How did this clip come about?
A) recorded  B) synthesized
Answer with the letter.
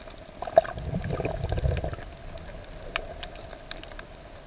A